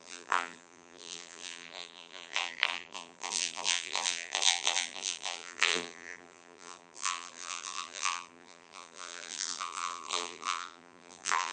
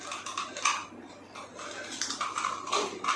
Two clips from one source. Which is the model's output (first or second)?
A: first